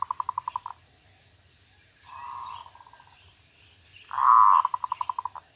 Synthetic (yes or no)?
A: no